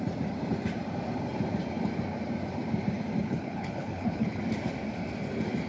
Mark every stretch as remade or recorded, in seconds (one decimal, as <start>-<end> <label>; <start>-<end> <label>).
0.0-3.2 recorded; 3.2-4.4 remade; 4.4-5.7 recorded